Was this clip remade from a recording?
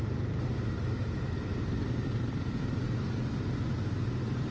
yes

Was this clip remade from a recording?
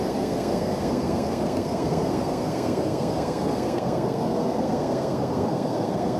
yes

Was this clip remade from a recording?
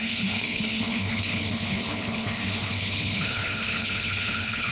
yes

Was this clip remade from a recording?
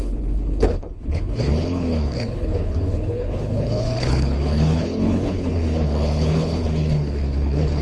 yes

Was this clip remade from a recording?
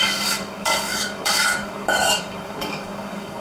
yes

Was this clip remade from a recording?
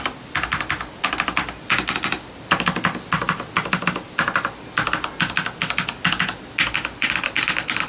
no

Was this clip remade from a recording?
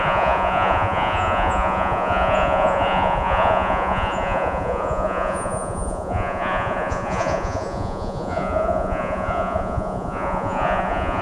yes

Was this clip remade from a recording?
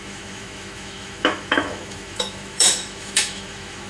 yes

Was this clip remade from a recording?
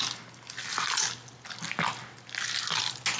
no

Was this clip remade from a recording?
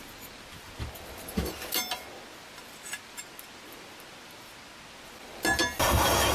no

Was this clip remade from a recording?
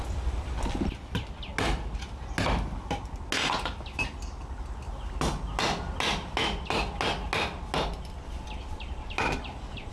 no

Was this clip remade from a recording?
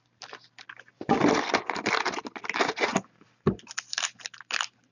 no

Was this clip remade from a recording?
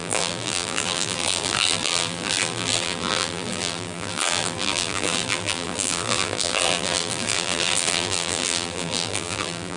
yes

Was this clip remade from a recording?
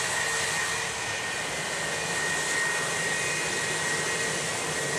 no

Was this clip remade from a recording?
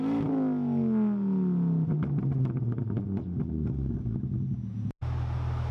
no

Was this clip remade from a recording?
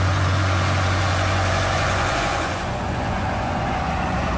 yes